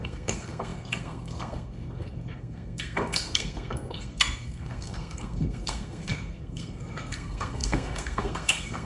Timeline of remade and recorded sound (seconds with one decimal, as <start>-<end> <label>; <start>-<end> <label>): 0.0-8.9 remade